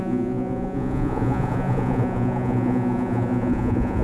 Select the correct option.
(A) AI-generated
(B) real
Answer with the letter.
A